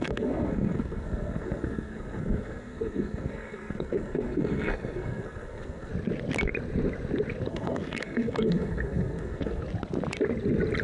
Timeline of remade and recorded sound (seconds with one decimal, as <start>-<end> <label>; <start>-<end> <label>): 0.0-5.9 remade; 5.9-7.5 recorded; 7.5-9.6 remade; 9.6-10.8 recorded